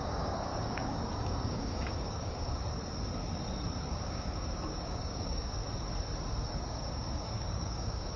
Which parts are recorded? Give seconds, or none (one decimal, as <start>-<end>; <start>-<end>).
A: 2.6-4.0; 5.6-6.5